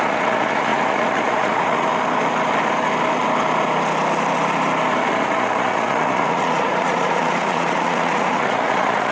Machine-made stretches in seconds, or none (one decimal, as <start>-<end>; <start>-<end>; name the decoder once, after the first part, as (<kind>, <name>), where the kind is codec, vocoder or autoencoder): 0.0-1.9 (vocoder, Vocos); 5.1-9.1